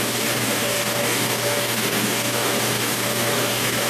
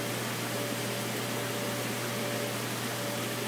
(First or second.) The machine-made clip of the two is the first